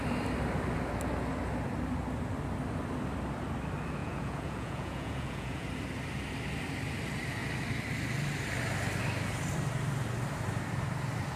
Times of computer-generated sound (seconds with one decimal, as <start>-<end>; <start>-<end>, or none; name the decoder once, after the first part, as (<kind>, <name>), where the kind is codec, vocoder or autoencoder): 4.0-5.7 (vocoder, Vocos)